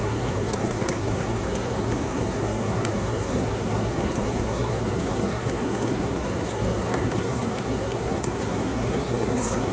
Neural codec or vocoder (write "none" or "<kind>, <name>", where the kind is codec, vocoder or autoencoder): codec, SNAC